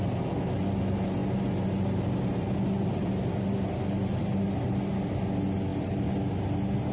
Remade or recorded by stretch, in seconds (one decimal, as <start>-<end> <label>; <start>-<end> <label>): 0.0-6.9 recorded